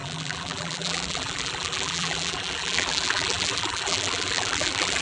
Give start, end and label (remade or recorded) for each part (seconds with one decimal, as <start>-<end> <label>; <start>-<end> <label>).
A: 0.0-5.0 remade